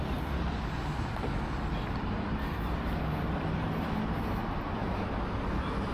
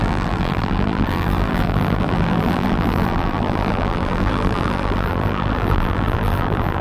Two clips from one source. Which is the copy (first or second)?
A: second